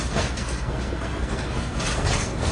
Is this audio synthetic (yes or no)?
yes